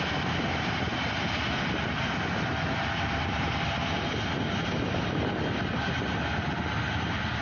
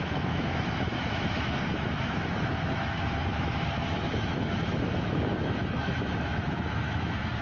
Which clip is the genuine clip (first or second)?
first